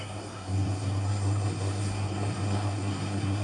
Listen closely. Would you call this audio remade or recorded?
remade